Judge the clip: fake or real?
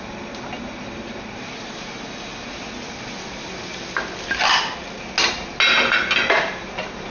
real